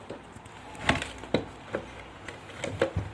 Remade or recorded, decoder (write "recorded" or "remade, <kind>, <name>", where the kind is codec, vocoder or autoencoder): recorded